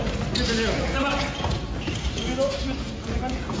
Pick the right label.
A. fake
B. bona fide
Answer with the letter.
B